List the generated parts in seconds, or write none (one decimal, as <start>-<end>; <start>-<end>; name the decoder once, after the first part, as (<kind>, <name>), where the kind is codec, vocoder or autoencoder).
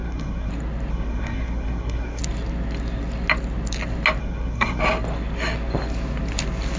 0.0-0.5 (codec, SNAC); 0.9-2.2; 4.2-4.8